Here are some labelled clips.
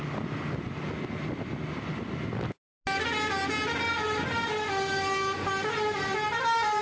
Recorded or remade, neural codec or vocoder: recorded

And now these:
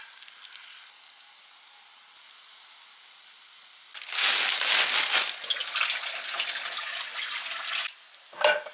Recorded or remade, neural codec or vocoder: recorded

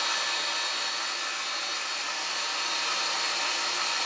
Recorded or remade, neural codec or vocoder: recorded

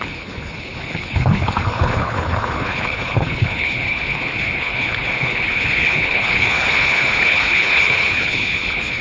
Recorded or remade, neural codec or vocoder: remade, codec, HILCodec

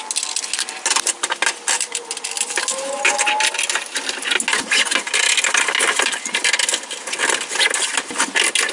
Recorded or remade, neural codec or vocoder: recorded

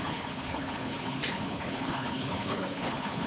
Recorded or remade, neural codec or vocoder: remade, codec, HILCodec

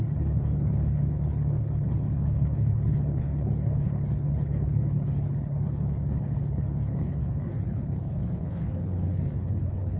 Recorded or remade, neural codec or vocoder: remade, codec, HILCodec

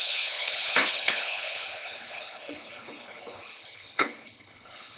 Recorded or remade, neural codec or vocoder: remade, codec, HILCodec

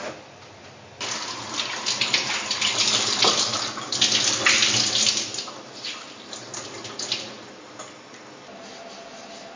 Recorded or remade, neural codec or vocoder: recorded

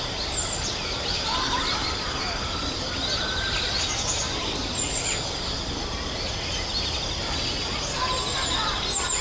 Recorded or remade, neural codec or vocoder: recorded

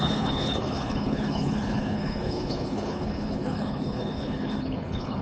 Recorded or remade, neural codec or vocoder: remade, codec, HILCodec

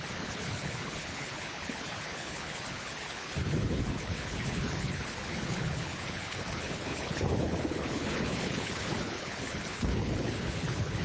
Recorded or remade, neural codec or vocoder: remade, codec, HILCodec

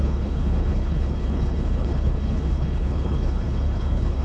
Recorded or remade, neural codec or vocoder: remade, codec, HILCodec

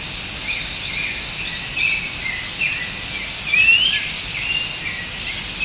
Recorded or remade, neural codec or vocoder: recorded